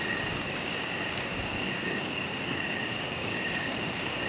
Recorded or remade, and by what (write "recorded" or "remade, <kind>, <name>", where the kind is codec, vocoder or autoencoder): remade, codec, DAC